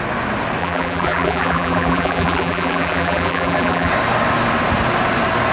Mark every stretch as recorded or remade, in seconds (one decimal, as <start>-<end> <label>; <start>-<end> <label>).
0.0-0.6 recorded; 0.6-3.9 remade; 3.9-5.5 recorded